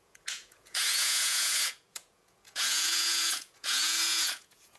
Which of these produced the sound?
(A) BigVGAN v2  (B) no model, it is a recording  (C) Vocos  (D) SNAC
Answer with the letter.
C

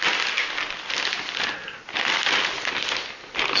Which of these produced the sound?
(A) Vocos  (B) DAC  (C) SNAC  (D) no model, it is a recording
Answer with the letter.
D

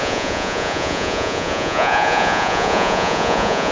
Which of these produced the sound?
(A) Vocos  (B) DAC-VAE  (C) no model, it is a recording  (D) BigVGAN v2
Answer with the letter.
A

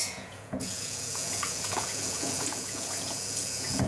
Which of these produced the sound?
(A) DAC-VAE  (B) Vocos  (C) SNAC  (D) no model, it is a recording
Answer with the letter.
B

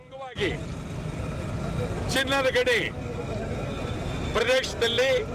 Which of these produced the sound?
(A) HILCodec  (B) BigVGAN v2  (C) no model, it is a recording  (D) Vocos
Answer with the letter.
C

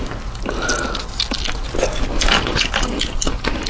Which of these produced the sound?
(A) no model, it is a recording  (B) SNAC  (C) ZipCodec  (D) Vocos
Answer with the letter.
A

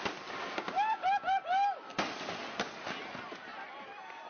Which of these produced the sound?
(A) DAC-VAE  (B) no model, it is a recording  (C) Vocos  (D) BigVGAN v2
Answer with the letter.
B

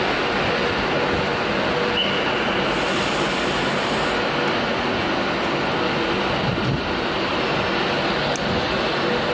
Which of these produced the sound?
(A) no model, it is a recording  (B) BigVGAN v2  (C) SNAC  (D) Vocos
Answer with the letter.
A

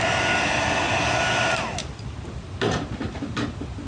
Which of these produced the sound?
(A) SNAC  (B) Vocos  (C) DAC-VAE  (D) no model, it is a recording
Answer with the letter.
D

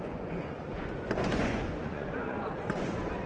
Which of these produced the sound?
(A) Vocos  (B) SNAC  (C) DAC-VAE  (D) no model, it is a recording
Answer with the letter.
A